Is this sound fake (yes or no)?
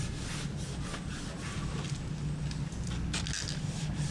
no